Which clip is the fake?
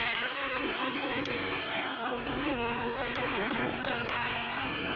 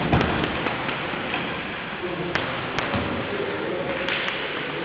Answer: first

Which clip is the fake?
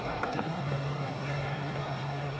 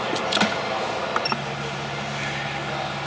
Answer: first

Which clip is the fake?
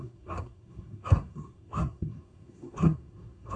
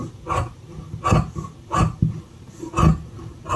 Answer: first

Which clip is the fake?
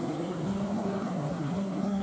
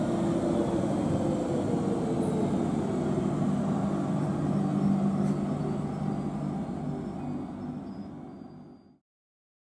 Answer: first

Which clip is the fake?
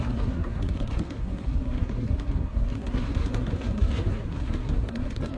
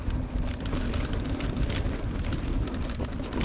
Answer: first